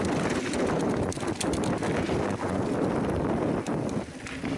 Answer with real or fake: real